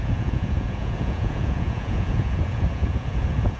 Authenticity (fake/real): fake